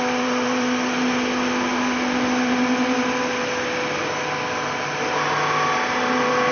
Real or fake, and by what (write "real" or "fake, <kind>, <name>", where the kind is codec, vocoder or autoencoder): fake, vocoder, BigVGAN v2